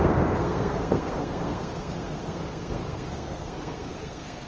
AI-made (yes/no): yes